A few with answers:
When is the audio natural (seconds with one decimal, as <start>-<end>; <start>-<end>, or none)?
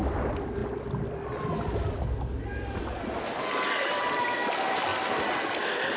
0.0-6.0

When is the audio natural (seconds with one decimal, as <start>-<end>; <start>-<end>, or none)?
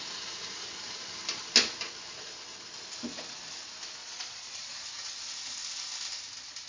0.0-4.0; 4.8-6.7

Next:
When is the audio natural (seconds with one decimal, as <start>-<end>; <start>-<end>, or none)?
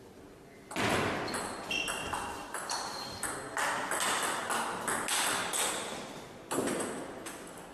0.0-2.4; 3.3-7.7